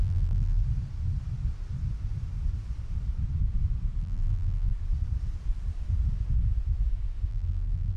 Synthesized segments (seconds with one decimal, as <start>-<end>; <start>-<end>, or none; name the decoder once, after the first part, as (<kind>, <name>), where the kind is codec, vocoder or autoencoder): 0.0-0.6 (vocoder, BigVGAN v2); 4.0-4.7; 7.3-8.0